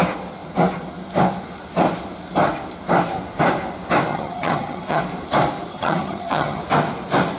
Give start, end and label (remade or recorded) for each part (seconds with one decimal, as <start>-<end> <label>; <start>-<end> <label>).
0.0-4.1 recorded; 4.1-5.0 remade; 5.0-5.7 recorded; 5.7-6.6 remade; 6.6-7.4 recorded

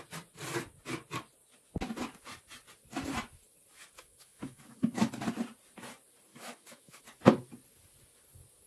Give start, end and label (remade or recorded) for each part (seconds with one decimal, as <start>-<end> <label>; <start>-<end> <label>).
0.0-3.8 recorded; 3.8-5.1 remade; 5.1-6.3 recorded; 6.3-7.0 remade; 7.0-8.7 recorded

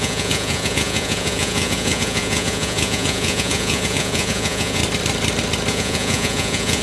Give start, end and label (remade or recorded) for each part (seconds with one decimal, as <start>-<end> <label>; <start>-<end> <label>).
0.0-4.8 remade; 4.8-5.7 recorded; 5.7-6.8 remade

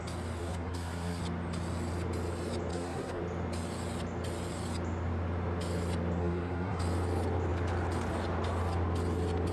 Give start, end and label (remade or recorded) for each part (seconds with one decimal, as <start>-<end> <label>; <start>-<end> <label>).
0.0-0.4 recorded; 0.4-1.2 remade; 1.2-2.7 recorded; 2.7-3.2 remade; 3.2-6.2 recorded; 6.2-6.8 remade; 6.8-9.5 recorded

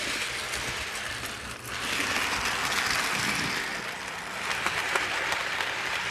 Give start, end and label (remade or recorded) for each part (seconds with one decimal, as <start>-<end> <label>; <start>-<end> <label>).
0.0-6.1 recorded

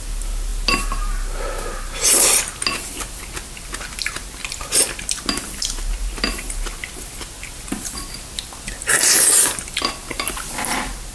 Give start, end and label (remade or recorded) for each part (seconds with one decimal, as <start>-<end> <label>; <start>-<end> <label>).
0.0-11.1 recorded